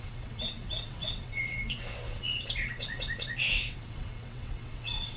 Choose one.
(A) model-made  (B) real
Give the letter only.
A